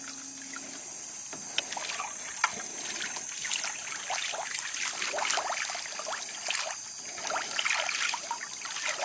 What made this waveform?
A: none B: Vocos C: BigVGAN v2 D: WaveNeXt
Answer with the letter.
A